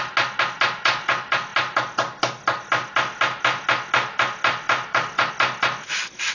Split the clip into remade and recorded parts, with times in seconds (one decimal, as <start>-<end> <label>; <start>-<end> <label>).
0.0-6.3 recorded